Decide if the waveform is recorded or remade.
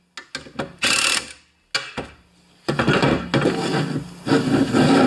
recorded